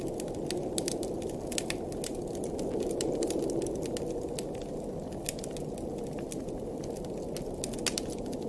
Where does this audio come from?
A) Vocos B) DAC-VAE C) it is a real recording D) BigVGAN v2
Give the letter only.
C